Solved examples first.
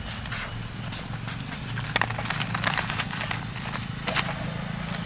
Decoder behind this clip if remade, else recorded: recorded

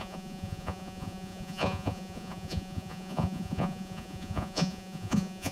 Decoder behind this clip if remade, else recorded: remade, vocoder, Vocos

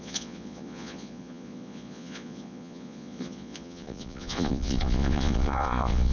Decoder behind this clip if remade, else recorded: remade, vocoder, Vocos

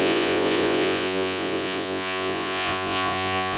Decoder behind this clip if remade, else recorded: remade, vocoder, Vocos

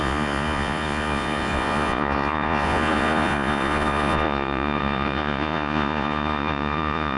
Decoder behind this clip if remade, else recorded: remade, vocoder, Vocos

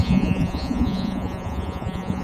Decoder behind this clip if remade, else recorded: remade, vocoder, Vocos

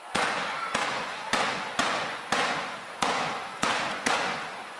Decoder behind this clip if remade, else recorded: remade, vocoder, Vocos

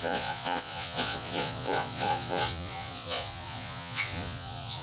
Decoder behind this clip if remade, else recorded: remade, vocoder, Vocos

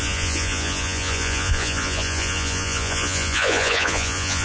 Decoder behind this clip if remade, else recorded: remade, vocoder, Vocos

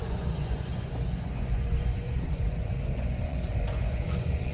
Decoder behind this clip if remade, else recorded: remade, vocoder, Vocos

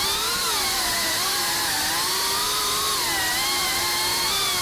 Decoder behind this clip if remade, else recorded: recorded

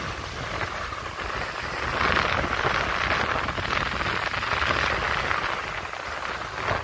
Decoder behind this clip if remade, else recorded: recorded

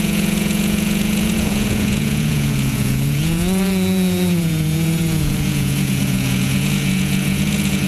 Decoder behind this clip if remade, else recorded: remade, vocoder, Vocos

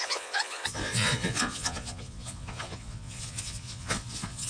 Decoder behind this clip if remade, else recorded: remade, vocoder, Vocos